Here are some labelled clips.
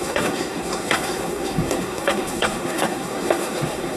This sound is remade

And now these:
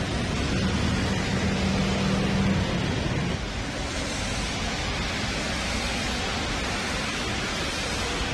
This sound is recorded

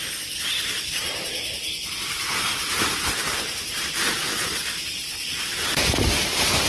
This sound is remade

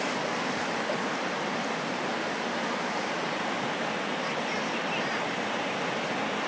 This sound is remade